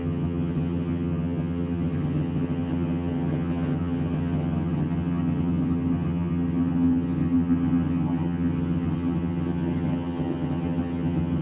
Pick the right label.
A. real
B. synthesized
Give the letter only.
B